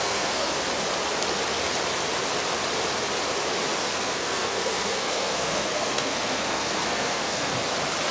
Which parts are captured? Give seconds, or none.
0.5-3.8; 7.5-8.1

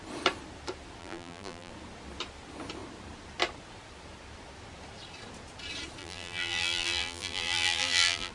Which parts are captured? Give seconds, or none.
0.0-1.0; 1.7-6.0

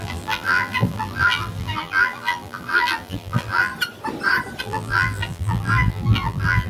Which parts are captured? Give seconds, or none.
3.7-4.6

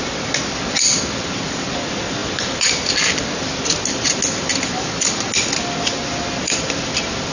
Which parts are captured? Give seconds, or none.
0.0-7.3